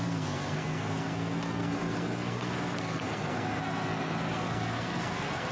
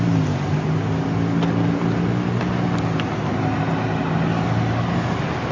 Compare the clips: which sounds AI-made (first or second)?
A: first